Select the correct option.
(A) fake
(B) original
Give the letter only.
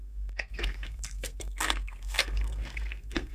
A